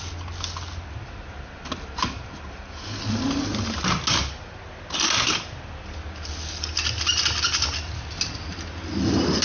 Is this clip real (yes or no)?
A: yes